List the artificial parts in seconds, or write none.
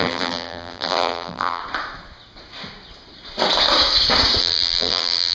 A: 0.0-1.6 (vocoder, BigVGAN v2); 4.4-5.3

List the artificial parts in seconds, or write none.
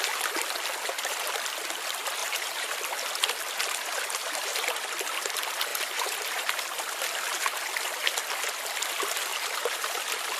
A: 2.2-2.8 (vocoder, BigVGAN v2); 5.7-6.9; 9.3-10.0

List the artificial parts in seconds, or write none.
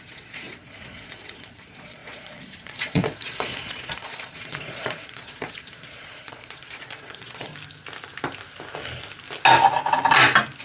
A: 0.0-7.5 (vocoder, Vocos)